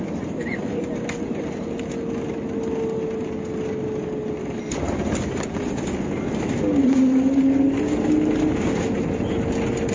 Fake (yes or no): no